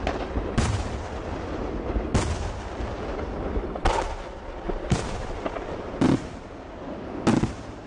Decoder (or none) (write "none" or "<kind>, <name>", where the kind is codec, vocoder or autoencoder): none